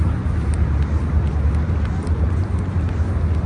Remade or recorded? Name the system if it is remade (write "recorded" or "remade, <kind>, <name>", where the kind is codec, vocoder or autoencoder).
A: recorded